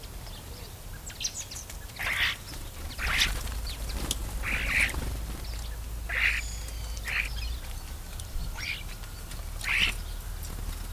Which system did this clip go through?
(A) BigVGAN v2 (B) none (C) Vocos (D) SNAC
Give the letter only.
B